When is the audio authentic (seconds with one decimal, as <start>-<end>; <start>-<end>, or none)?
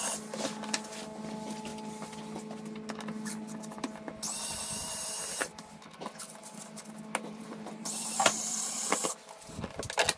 0.0-7.3; 8.8-10.2